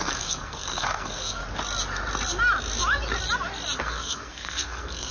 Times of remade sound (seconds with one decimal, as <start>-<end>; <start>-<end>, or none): 0.0-1.4; 3.8-5.1